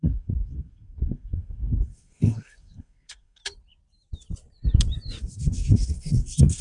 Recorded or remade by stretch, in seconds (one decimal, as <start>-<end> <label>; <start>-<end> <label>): 0.0-3.4 remade; 3.4-5.2 recorded; 5.2-6.6 remade